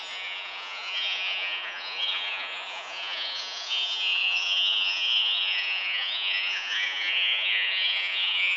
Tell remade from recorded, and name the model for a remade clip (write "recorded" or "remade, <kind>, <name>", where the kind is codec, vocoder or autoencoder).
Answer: remade, vocoder, Vocos